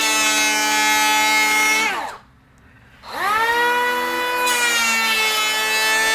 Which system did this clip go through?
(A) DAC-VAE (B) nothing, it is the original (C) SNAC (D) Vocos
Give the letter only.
B